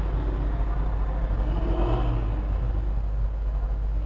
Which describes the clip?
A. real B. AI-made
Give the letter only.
A